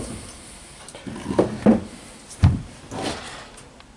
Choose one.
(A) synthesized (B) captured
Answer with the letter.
B